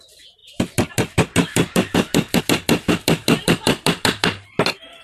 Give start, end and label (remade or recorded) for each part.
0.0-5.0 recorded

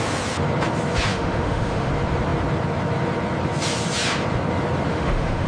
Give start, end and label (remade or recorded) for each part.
0.0-1.1 recorded; 1.1-1.9 remade; 1.9-4.9 recorded; 4.9-5.5 remade

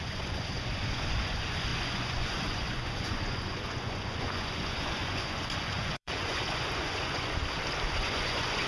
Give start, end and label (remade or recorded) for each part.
0.0-7.4 remade; 7.4-7.9 recorded; 7.9-8.7 remade